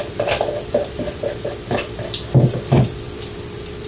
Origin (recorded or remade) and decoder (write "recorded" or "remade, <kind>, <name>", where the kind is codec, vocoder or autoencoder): recorded